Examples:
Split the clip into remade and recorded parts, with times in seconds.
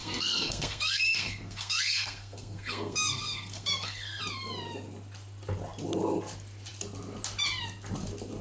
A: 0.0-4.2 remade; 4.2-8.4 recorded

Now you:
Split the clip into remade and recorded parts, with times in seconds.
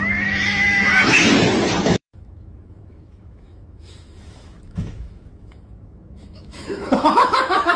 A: 0.0-0.9 remade; 0.9-1.8 recorded; 1.8-7.8 remade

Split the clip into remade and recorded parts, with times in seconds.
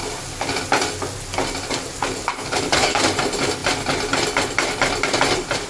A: 0.0-2.2 recorded; 2.2-3.0 remade; 3.0-5.7 recorded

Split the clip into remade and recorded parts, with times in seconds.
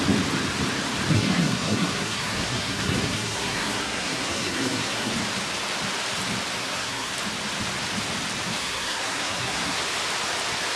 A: 0.0-1.1 recorded; 1.1-5.1 remade; 5.1-6.6 recorded; 6.6-7.1 remade; 7.1-8.6 recorded; 8.6-9.8 remade; 9.8-10.8 recorded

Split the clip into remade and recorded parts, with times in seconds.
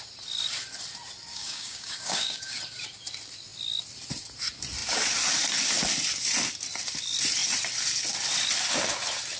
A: 0.0-1.3 recorded; 1.3-2.6 remade; 2.6-9.4 recorded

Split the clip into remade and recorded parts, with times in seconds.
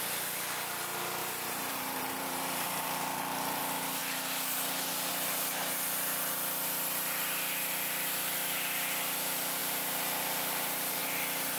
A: 0.0-1.2 recorded; 1.2-3.6 remade; 3.6-9.6 recorded; 9.6-11.0 remade; 11.0-11.6 recorded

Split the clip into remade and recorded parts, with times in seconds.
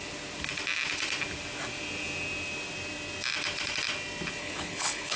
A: 0.0-4.4 recorded; 4.4-5.2 remade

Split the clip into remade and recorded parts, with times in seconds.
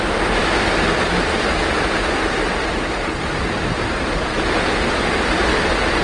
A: 0.0-6.0 recorded